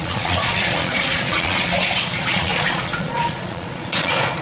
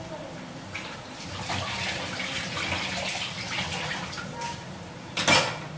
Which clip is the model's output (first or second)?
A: first